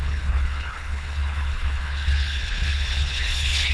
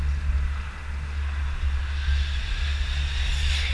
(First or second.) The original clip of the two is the second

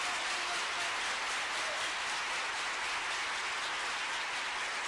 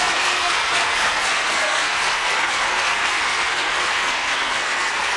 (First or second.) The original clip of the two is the first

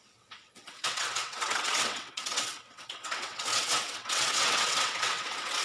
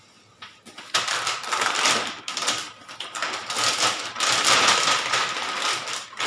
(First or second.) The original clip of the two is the second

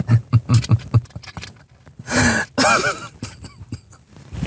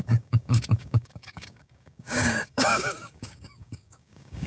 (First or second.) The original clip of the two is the first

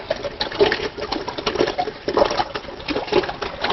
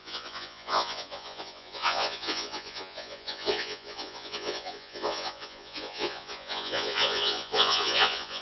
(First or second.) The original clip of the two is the first